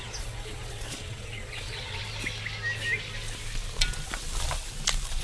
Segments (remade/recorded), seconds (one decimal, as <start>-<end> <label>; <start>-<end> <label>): 0.0-2.0 remade; 2.0-5.2 recorded